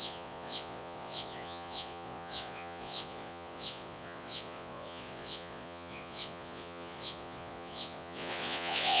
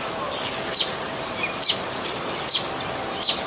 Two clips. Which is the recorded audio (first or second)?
second